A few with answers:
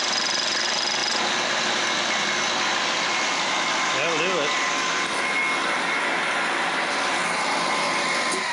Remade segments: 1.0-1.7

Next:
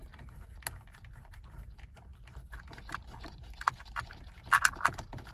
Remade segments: none